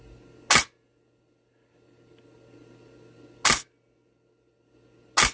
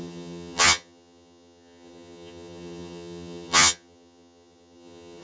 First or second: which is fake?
second